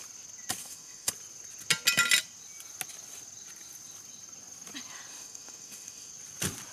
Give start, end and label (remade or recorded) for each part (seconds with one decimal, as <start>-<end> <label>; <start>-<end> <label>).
0.0-0.6 recorded; 0.6-1.1 remade; 1.1-5.1 recorded; 5.1-6.1 remade; 6.1-6.7 recorded